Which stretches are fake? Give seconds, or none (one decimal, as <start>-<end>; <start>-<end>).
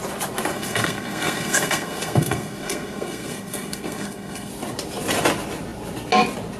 0.5-4.5